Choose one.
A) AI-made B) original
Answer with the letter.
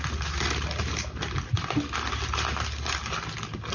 B